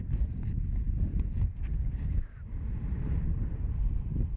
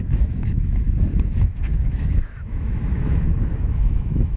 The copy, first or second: second